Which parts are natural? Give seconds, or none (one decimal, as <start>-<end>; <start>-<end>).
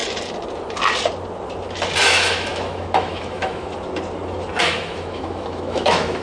0.0-2.0; 3.7-4.6